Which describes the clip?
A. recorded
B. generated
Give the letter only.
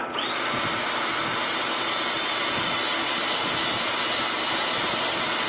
A